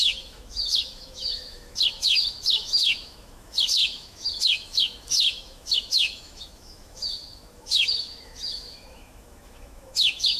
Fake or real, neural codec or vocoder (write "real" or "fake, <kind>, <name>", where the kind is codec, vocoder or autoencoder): fake, autoencoder, DAC-VAE